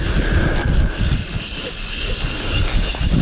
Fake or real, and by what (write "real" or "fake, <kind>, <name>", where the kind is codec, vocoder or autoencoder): real